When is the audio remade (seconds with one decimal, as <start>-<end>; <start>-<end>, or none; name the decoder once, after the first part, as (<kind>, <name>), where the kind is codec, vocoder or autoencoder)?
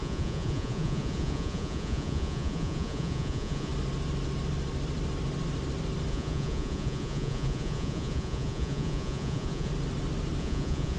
0.0-3.7 (vocoder, Vocos); 6.1-9.7; 10.4-11.0